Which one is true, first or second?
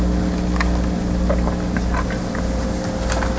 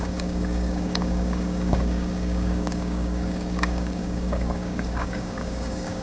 first